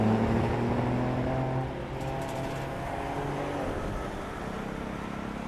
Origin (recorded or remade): recorded